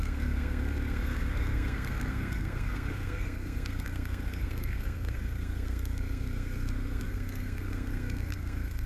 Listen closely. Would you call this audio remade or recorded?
remade